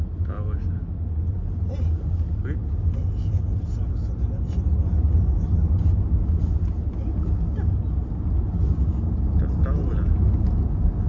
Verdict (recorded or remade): recorded